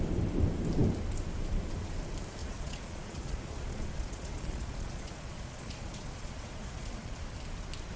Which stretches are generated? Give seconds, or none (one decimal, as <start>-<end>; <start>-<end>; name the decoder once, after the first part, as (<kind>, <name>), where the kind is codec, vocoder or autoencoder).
2.4-7.2 (vocoder, Vocos)